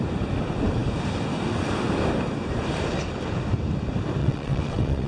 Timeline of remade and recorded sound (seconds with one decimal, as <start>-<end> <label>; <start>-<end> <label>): 0.0-4.2 recorded; 4.2-5.1 remade

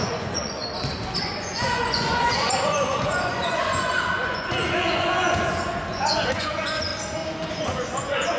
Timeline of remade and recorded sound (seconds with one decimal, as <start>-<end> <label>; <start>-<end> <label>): 0.0-0.6 remade; 0.6-1.2 recorded; 1.2-6.9 remade; 6.9-7.5 recorded; 7.5-8.4 remade

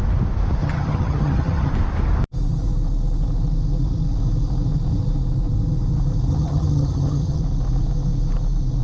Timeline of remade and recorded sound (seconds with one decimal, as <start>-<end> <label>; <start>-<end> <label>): 0.0-0.6 recorded; 0.6-1.7 remade; 1.7-6.3 recorded; 6.3-7.4 remade; 7.4-8.8 recorded

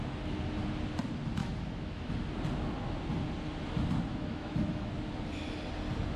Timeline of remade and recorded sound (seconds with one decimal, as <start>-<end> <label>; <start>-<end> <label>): 0.0-1.4 recorded; 1.4-2.1 remade; 2.1-4.1 recorded; 4.1-4.9 remade; 4.9-6.2 recorded

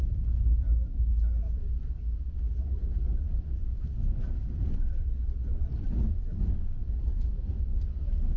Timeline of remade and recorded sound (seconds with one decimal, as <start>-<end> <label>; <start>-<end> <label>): 0.0-8.4 recorded

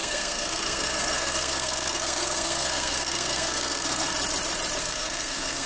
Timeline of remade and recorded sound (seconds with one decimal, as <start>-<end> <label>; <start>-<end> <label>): 0.0-4.1 remade; 4.1-4.8 recorded; 4.8-5.7 remade

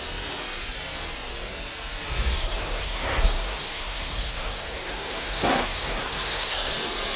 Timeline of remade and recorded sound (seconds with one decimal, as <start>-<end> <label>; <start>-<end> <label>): 0.0-2.4 recorded; 2.4-6.7 remade; 6.7-7.2 recorded

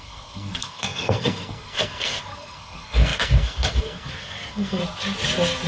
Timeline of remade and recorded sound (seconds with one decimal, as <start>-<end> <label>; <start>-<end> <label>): 0.0-4.8 remade; 4.8-5.7 recorded